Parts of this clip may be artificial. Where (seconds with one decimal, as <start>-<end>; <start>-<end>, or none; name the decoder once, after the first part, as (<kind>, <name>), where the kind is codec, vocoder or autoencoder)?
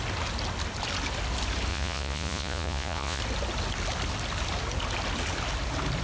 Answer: 1.7-3.2 (vocoder, Vocos)